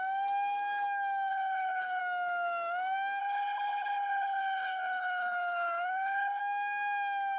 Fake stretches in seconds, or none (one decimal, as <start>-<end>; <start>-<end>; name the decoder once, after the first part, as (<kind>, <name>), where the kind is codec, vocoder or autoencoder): 1.3-2.0 (codec, HILCodec); 3.2-6.4